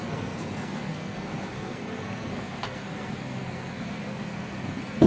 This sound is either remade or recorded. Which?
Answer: remade